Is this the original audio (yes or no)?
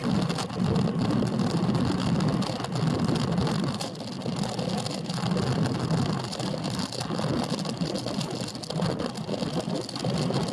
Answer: yes